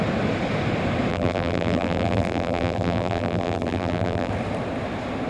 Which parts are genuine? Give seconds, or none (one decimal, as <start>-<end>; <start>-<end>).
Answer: 0.0-1.1; 4.3-5.3